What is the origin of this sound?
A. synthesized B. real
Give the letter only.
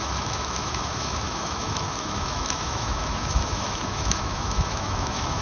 A